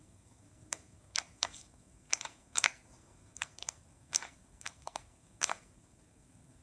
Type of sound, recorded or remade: remade